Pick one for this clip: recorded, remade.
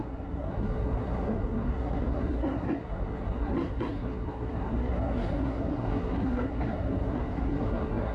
remade